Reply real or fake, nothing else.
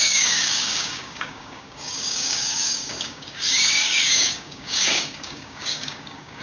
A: fake